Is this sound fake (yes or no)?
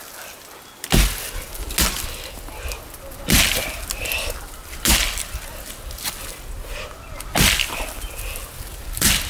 no